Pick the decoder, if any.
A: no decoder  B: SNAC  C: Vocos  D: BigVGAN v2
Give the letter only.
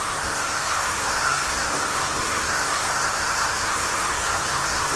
B